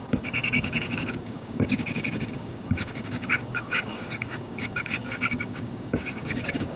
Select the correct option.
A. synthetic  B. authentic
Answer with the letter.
A